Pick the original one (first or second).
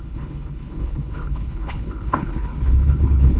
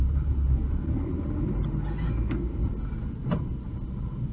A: second